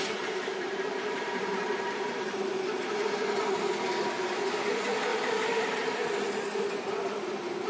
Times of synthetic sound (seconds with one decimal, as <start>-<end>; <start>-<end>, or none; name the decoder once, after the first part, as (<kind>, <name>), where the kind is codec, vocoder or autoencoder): 0.5-2.9 (vocoder, BigVGAN v2); 5.1-5.7